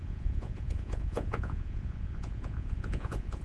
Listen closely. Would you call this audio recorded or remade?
remade